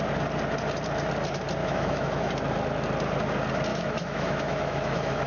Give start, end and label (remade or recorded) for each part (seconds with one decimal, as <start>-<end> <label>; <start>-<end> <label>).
0.0-1.6 recorded; 1.6-2.3 remade; 2.3-3.7 recorded; 3.7-5.3 remade